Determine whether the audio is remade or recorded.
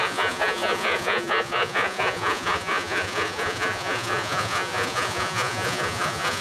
remade